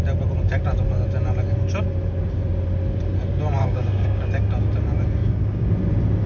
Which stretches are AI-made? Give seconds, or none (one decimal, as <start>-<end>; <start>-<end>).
3.6-4.3; 5.2-5.7